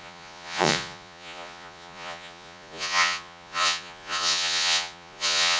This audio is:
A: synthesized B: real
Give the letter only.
A